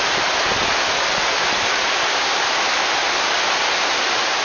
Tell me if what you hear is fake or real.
real